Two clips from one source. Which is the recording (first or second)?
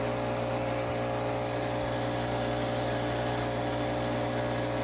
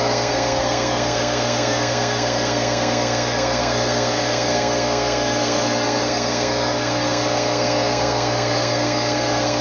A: first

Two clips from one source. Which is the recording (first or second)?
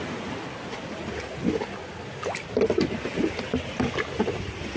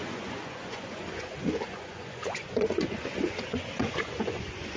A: first